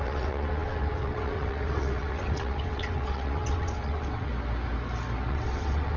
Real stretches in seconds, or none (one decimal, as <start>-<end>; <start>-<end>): 4.3-5.3